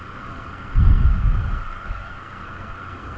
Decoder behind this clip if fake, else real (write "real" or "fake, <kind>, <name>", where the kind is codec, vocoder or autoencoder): fake, codec, SNAC